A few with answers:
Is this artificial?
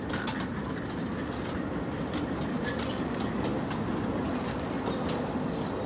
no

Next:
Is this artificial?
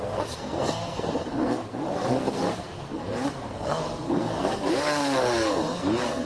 yes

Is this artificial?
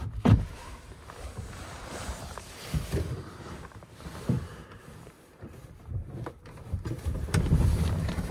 yes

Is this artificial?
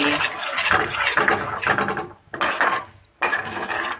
no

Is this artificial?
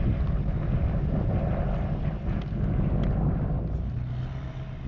no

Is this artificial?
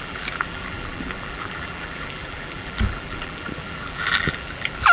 yes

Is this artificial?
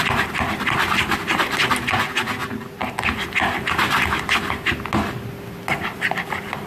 no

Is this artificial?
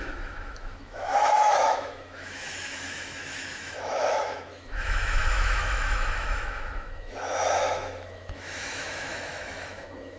yes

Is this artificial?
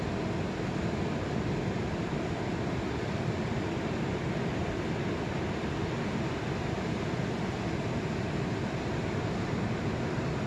no